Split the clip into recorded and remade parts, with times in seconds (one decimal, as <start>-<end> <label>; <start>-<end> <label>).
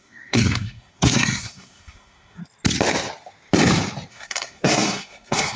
0.0-2.4 remade; 2.4-4.1 recorded; 4.1-5.6 remade